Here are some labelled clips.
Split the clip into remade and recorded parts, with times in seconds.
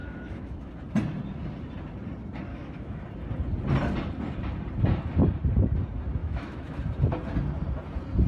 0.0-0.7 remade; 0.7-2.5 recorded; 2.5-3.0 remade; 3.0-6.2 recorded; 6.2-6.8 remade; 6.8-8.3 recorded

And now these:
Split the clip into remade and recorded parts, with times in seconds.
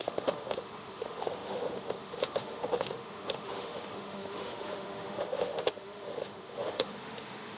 0.0-7.6 remade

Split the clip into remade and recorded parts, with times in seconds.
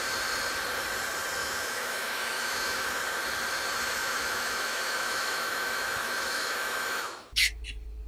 0.0-1.4 recorded; 1.4-3.0 remade; 3.0-4.0 recorded; 4.0-7.6 remade; 7.6-8.1 recorded